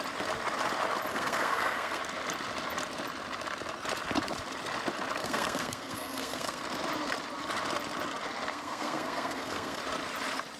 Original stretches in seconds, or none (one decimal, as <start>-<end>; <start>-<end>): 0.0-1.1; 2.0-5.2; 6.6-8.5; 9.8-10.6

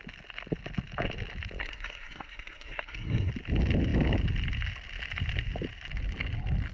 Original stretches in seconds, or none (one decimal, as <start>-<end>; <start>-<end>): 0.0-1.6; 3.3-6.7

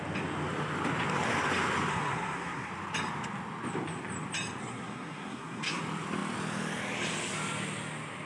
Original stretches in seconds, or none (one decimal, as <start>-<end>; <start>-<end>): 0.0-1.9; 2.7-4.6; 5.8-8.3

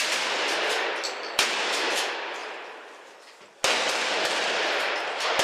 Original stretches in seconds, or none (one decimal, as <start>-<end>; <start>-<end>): 0.0-5.4

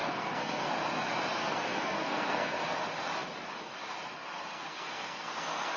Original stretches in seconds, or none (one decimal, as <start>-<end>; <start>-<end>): 0.7-1.4; 2.6-4.5